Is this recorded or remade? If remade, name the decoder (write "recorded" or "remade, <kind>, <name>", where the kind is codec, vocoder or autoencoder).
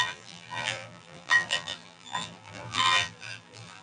remade, vocoder, BigVGAN v2